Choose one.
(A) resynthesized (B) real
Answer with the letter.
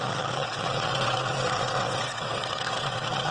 A